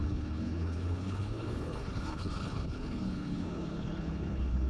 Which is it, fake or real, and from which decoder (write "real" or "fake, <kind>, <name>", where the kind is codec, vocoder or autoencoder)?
fake, codec, HILCodec